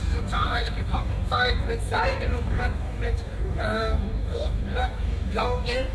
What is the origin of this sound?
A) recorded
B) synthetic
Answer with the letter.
B